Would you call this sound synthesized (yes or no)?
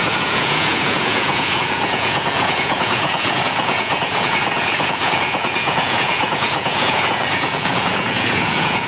yes